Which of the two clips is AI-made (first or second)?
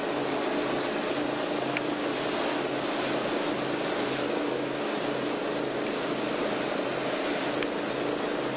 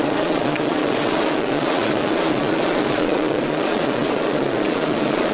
second